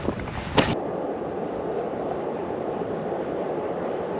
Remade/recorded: remade